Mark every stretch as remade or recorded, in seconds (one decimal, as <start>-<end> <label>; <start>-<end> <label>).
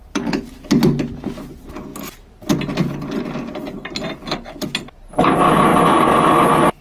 0.0-6.8 recorded